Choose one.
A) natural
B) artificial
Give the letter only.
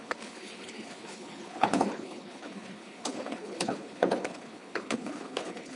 B